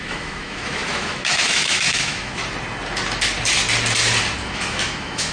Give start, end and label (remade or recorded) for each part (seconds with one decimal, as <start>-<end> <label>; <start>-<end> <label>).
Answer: 0.0-2.4 remade; 2.4-4.4 recorded; 4.4-5.3 remade